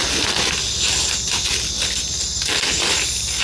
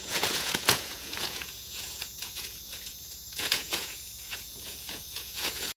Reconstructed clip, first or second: second